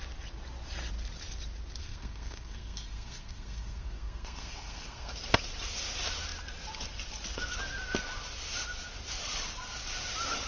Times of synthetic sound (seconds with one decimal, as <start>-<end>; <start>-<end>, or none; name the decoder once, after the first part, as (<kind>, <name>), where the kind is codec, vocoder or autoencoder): 1.8-5.1 (codec, SNAC)